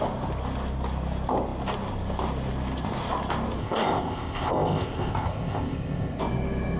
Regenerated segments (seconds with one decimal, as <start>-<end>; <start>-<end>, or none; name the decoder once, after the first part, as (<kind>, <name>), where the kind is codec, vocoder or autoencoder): 3.6-6.2 (codec, ZipCodec)